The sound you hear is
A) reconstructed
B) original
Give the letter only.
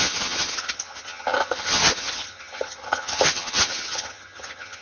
A